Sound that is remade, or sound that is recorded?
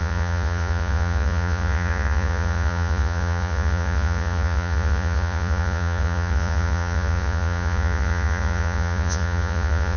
remade